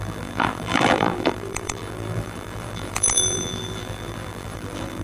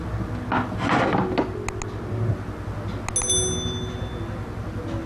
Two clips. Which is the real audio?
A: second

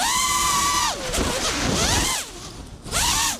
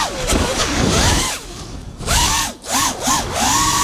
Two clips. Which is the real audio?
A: first